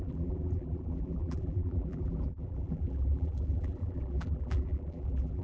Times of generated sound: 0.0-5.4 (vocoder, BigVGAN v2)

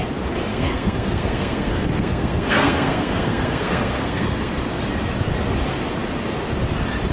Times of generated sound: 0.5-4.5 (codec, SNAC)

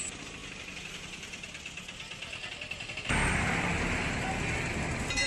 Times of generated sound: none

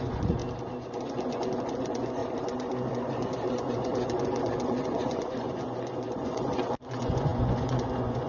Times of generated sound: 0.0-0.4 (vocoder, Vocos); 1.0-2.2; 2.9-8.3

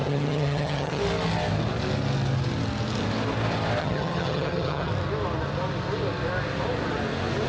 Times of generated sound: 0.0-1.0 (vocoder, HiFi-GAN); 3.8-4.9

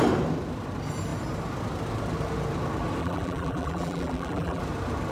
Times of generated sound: 3.0-4.6 (vocoder, BigVGAN v2)